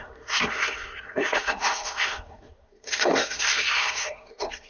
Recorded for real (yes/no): no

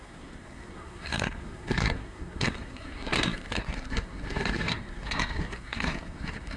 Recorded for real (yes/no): no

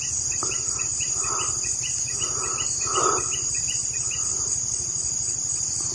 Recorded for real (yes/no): yes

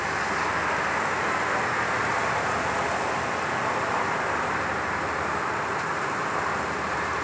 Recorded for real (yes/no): yes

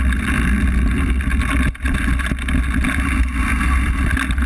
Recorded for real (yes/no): yes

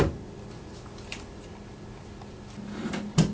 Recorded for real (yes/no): yes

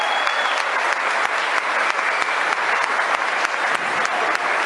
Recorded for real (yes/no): yes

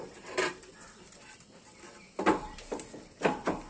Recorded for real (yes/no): yes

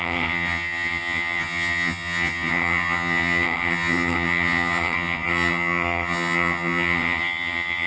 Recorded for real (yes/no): no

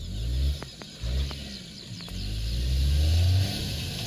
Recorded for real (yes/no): yes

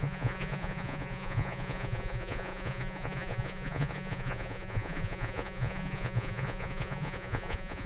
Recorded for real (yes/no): no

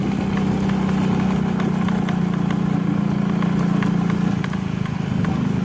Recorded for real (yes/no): yes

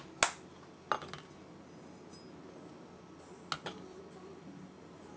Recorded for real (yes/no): yes